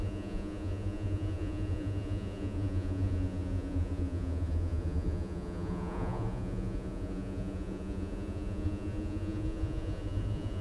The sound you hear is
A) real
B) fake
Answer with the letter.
B